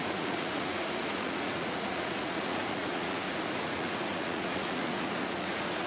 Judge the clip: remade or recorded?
remade